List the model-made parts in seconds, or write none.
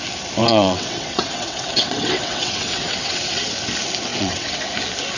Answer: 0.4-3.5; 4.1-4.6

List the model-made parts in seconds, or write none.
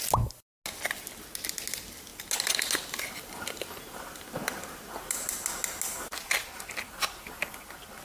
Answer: none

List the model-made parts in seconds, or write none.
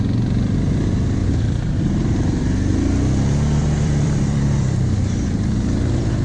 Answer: 1.2-2.7; 3.6-5.5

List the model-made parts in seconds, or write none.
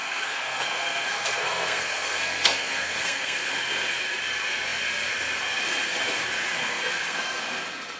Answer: 0.0-3.5; 6.4-7.4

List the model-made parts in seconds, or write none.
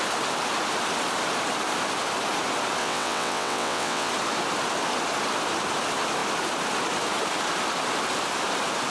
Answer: 2.8-4.1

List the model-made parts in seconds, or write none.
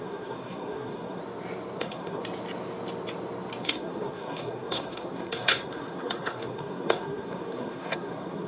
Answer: 0.0-1.2; 1.8-2.2; 3.6-8.5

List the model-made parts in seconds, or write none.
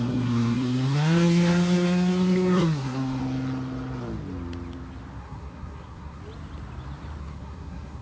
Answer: 0.0-3.2; 5.2-6.2; 7.2-8.0